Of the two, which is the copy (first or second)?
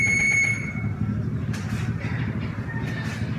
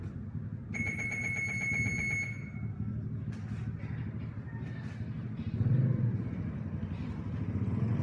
first